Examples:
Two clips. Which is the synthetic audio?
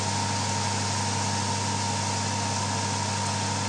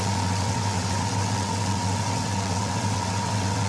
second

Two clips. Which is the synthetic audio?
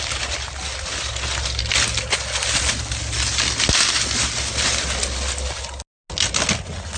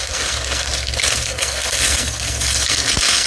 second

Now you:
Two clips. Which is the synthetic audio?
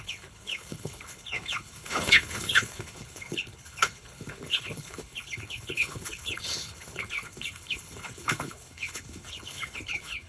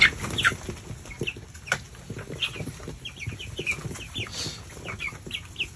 first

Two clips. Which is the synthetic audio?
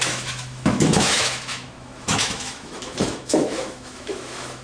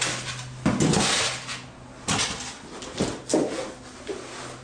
first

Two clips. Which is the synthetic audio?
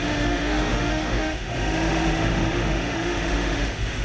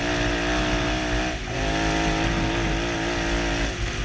first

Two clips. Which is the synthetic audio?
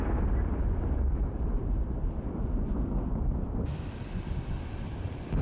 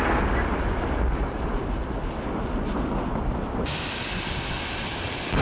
first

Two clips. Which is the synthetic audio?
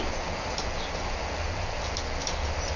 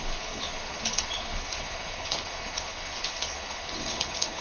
second